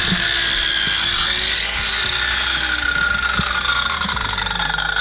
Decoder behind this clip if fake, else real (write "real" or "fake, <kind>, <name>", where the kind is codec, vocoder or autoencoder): real